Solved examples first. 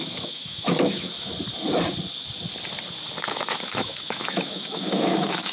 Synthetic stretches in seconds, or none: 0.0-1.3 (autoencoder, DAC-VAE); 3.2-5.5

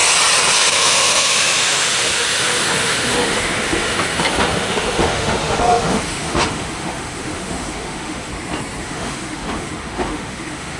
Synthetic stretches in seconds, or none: 0.7-8.3 (autoencoder, DAC-VAE); 8.8-10.8

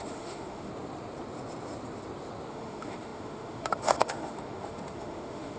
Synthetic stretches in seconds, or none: 0.0-0.7 (autoencoder, DAC-VAE); 2.5-5.6

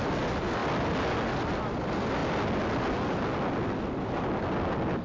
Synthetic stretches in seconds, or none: none

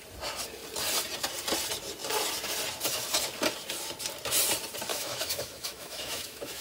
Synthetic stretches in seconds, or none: 4.9-6.6 (autoencoder, DAC-VAE)